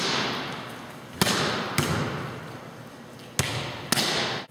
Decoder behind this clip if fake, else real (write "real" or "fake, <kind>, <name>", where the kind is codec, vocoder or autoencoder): real